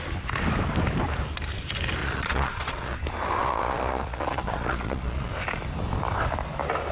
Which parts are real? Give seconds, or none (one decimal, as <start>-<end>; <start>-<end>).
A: 0.0-2.0; 3.0-3.4; 5.3-6.9